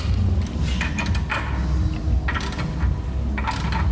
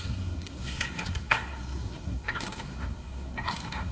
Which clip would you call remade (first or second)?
second